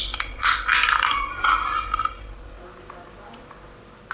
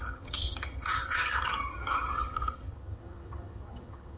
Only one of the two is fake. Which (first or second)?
second